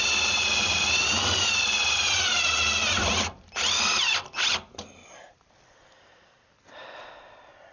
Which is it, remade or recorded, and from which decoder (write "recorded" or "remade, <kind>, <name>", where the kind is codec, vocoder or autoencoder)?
recorded